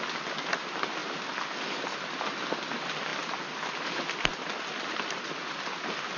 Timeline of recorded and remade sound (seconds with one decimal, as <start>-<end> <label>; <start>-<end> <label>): 0.0-6.2 recorded